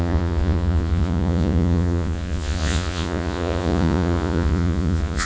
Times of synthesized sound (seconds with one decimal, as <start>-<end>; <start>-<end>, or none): 0.0-5.3